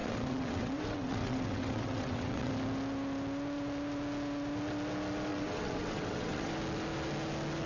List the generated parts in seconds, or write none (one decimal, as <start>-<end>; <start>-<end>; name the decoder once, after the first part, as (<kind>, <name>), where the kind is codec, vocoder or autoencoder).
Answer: 0.0-2.5 (vocoder, WaveNeXt); 5.3-6.5